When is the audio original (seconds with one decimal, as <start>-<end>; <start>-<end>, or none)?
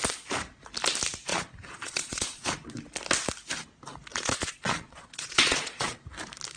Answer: 0.0-1.3; 2.7-4.1; 6.0-6.6